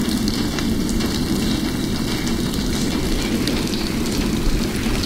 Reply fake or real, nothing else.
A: real